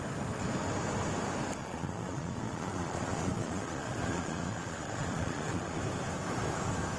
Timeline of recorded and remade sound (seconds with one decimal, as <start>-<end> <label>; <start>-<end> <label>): 0.0-1.6 recorded; 1.6-5.8 remade; 5.8-7.0 recorded